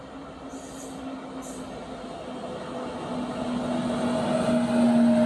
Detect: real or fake real